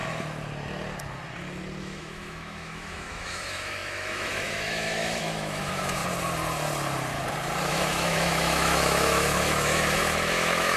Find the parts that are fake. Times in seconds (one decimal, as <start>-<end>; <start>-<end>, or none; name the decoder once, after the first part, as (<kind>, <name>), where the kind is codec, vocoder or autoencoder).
1.8-6.0 (autoencoder, DAC-VAE); 7.7-10.8